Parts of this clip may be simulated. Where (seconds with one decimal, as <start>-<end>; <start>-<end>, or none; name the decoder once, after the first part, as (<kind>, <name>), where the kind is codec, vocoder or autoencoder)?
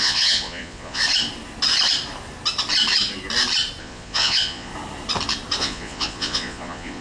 0.0-1.0 (vocoder, Vocos); 3.8-4.7; 5.6-7.0